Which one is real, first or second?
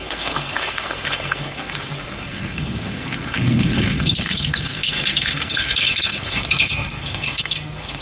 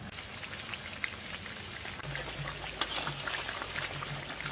second